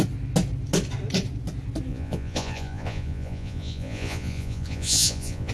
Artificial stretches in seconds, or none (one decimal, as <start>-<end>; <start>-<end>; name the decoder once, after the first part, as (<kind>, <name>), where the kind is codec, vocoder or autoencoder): 1.9-5.5 (vocoder, Vocos)